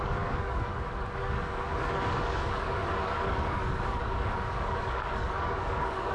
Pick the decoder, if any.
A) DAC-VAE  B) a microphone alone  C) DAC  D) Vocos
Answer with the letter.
C